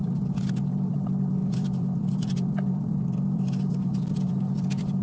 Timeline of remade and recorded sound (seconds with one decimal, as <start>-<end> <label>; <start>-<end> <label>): 0.0-1.4 recorded; 1.4-4.4 remade; 4.4-5.0 recorded